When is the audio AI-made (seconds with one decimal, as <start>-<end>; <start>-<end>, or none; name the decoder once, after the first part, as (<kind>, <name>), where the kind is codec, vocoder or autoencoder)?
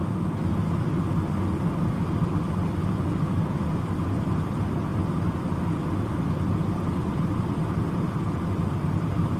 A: none